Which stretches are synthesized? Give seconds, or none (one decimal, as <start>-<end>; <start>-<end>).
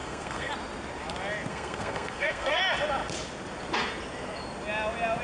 0.0-0.5; 1.5-2.6